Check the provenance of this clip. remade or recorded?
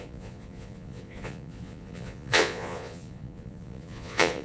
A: remade